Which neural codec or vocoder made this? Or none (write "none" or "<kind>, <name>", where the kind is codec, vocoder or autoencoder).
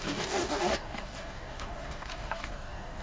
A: codec, DAC